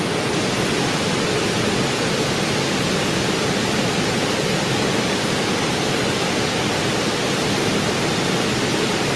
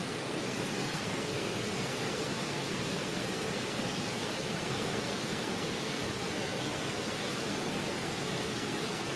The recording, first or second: first